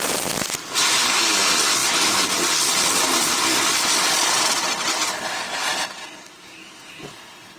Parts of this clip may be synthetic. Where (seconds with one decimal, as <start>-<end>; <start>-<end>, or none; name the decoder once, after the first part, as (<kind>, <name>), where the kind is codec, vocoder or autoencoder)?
none